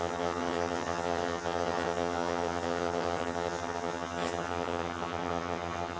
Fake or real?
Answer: fake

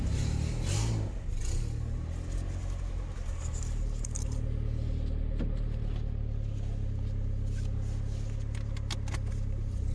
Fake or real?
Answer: real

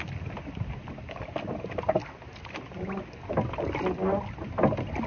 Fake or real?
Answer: real